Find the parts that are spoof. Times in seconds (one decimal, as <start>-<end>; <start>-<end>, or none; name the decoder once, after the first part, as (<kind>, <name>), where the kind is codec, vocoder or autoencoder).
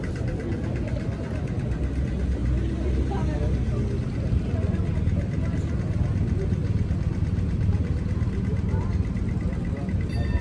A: none